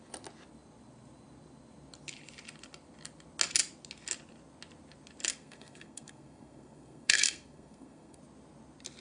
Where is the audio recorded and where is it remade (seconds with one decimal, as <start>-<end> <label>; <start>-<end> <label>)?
0.0-5.3 recorded; 5.3-8.2 remade; 8.2-9.0 recorded